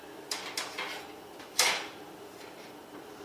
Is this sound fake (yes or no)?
no